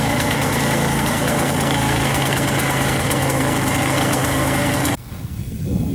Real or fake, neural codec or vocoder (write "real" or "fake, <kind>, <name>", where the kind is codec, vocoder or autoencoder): fake, codec, SNAC